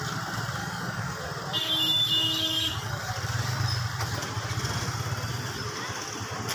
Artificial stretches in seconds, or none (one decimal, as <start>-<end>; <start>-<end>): 0.6-1.2; 1.6-3.1